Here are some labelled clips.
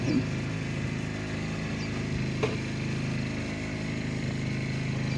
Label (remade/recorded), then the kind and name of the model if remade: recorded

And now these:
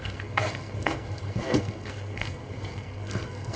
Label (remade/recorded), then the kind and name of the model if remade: remade, codec, SNAC